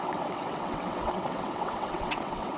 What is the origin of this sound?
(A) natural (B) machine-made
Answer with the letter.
B